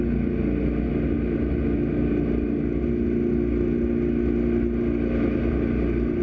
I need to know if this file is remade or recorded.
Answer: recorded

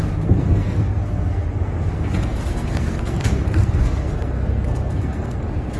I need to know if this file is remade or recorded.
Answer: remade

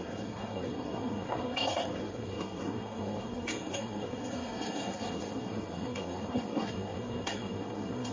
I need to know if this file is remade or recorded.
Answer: remade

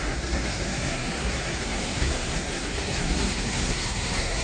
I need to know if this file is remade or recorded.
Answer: remade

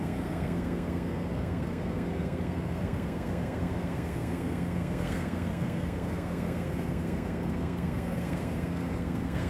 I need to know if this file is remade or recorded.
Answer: remade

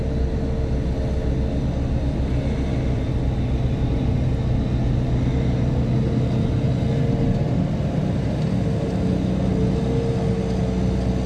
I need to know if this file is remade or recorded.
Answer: recorded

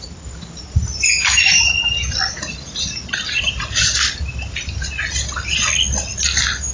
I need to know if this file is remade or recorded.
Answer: recorded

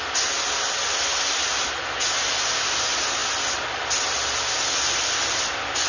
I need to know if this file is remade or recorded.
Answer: recorded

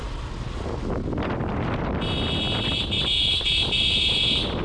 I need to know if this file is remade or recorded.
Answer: recorded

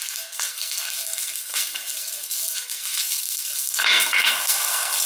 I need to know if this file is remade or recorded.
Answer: remade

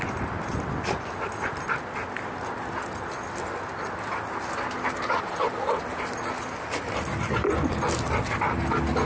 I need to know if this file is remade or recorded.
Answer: recorded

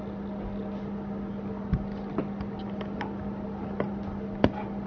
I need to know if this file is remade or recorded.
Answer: recorded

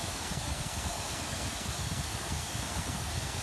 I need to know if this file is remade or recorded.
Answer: remade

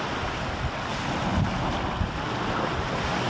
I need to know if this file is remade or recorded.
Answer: recorded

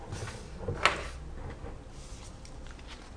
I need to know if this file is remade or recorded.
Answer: recorded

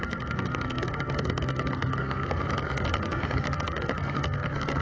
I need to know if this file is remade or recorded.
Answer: remade